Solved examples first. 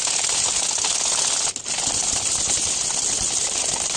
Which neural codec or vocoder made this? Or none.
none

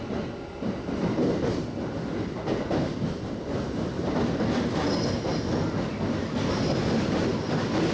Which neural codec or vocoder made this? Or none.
none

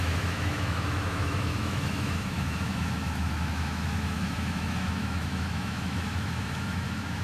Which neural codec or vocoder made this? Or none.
autoencoder, DAC-VAE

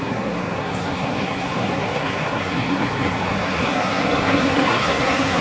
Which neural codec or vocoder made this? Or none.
codec, SNAC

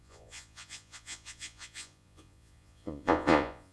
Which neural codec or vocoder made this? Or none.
vocoder, Vocos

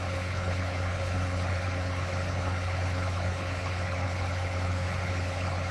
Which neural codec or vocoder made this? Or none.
codec, HILCodec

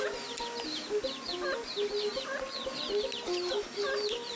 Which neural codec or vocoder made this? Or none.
none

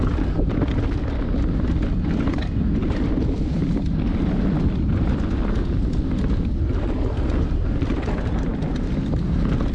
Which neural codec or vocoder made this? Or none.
none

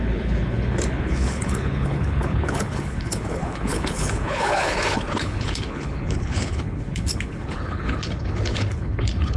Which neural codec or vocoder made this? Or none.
codec, HILCodec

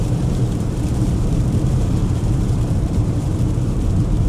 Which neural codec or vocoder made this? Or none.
vocoder, BigVGAN v2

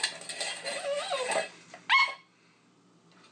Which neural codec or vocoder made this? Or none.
none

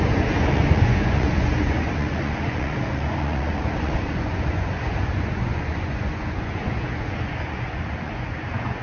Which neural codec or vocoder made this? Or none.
vocoder, Vocos